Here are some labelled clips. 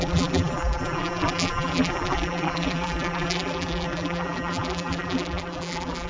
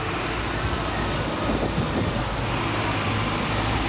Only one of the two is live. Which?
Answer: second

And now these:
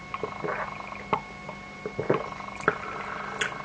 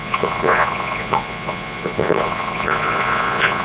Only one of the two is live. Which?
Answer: first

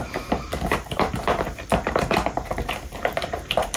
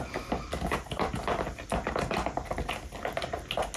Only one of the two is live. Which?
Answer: second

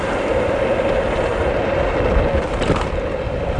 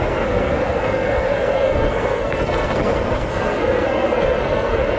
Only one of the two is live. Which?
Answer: first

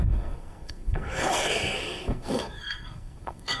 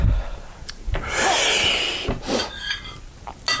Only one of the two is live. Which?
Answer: second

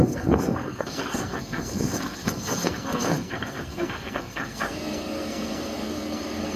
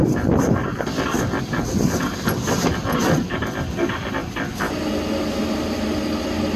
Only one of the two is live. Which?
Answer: second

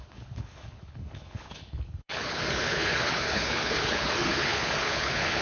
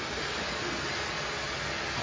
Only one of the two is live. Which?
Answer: second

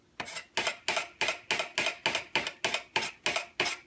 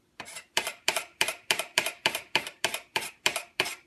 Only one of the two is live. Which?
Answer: first